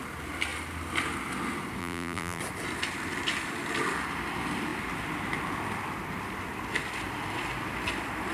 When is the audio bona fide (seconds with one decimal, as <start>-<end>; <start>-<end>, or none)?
0.0-1.8; 2.4-8.3